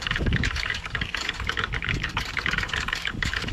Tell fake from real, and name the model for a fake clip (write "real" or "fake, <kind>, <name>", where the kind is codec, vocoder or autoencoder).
fake, codec, DAC